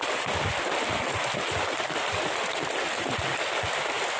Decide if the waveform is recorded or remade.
recorded